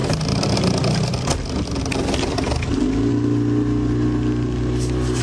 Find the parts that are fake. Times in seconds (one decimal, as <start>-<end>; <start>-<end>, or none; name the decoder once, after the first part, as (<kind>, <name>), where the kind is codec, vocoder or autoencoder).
none